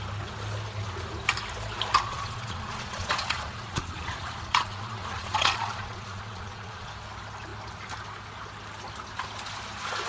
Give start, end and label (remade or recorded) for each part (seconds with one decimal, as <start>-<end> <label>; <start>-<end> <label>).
0.0-2.1 recorded; 2.1-6.9 remade; 6.9-10.1 recorded